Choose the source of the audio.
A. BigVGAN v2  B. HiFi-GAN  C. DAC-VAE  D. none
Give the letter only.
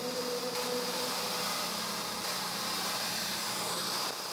A